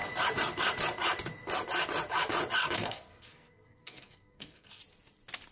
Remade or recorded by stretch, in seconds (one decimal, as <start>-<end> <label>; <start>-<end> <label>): 0.0-2.6 recorded; 2.6-4.8 remade; 4.8-5.5 recorded